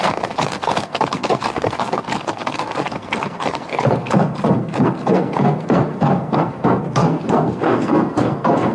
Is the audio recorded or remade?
remade